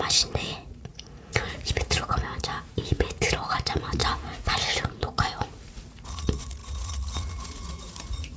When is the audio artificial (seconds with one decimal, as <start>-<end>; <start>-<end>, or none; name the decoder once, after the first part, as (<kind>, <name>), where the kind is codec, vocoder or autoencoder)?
0.0-8.4 (vocoder, Vocos)